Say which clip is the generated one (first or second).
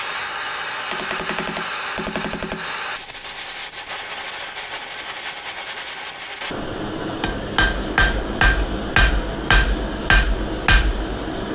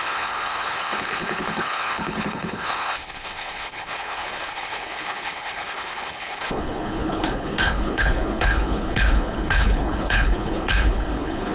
second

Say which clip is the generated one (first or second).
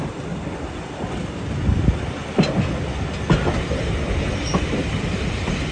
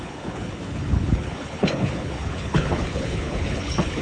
second